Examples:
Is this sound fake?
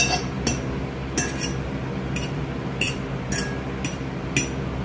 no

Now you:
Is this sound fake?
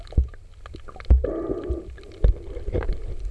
no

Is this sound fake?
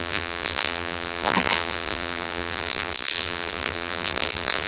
yes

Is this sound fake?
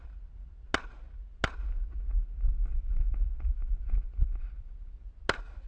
no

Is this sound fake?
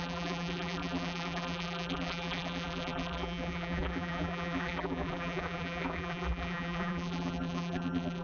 yes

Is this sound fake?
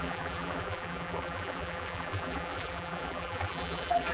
yes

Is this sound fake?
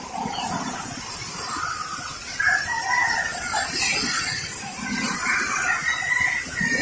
no